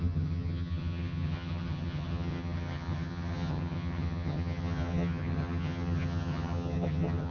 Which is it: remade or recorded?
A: remade